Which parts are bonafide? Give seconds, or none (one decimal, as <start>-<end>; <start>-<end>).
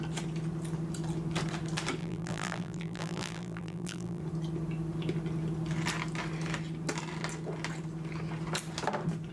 0.0-2.0; 4.2-9.3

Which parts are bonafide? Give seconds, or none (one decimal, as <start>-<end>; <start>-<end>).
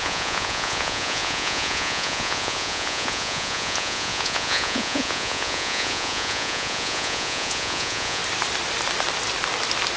8.2-10.0